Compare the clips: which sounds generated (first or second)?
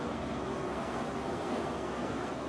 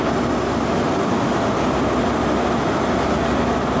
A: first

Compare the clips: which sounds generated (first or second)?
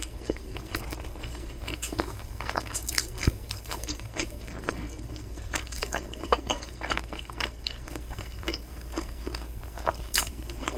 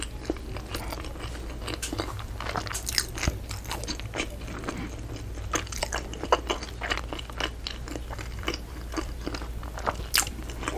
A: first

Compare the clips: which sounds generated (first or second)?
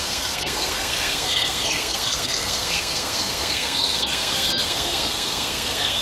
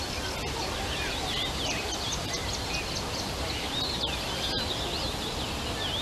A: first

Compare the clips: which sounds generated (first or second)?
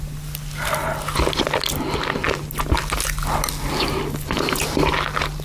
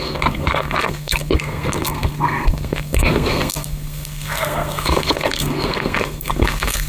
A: second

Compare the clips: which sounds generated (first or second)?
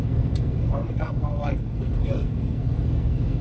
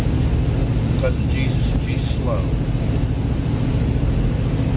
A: first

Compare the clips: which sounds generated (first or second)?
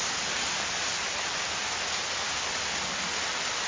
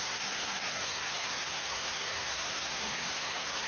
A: second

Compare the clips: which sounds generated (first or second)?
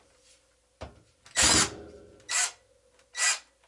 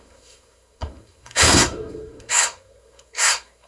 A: second